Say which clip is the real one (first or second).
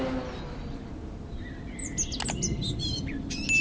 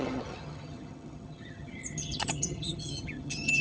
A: first